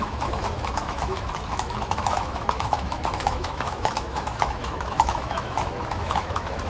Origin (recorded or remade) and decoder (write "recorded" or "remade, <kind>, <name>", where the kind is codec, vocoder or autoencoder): remade, autoencoder, DAC-VAE